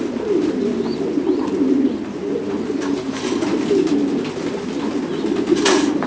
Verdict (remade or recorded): recorded